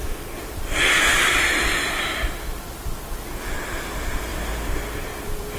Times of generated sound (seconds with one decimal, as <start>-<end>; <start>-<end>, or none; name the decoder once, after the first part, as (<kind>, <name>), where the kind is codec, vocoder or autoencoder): 0.0-1.2 (vocoder, BigVGAN v2); 1.7-2.2; 4.3-5.6